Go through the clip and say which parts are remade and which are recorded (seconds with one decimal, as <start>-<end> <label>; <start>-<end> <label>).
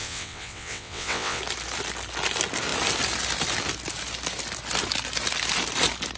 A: 0.0-1.4 remade; 1.4-6.2 recorded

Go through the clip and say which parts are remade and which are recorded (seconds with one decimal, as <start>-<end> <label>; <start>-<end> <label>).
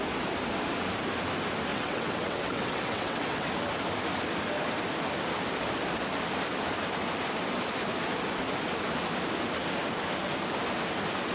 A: 0.0-1.7 recorded; 1.7-3.5 remade; 3.5-11.3 recorded